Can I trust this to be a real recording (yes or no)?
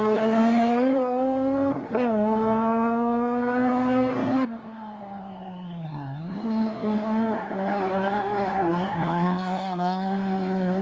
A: no